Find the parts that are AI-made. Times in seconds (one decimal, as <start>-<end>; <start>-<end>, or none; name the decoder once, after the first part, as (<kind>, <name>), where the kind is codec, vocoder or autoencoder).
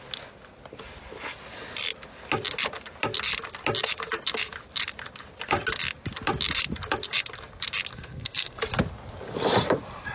7.9-8.6 (codec, SNAC)